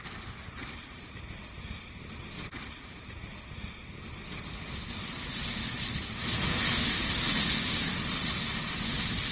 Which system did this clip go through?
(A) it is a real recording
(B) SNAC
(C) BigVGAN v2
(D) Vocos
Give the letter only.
A